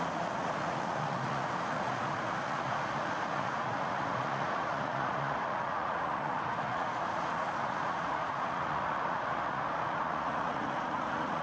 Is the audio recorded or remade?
remade